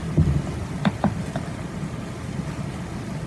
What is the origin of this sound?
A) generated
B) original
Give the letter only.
B